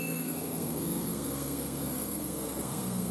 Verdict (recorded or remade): remade